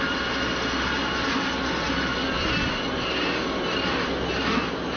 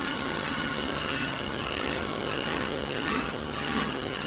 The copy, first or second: second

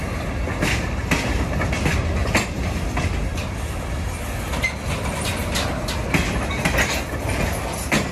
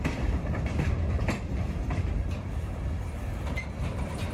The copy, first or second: second